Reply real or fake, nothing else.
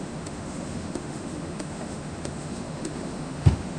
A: fake